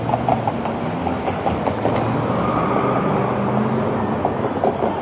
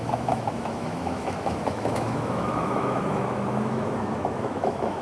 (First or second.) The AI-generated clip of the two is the second